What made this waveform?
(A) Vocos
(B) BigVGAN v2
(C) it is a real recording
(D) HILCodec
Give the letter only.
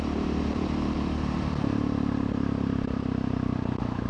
B